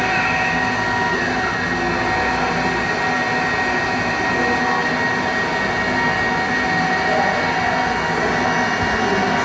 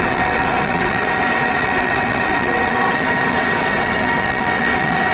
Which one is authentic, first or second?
first